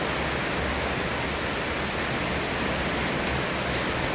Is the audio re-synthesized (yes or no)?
no